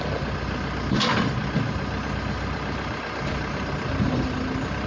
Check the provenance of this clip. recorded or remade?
recorded